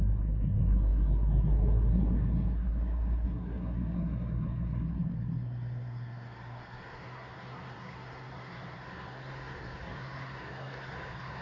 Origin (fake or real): fake